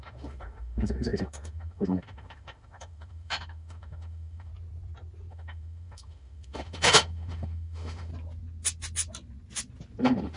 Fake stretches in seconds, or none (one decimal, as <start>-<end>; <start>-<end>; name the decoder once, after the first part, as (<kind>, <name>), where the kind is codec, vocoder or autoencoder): 0.0-4.5 (autoencoder, DAC-VAE); 5.3-8.1; 10.0-10.4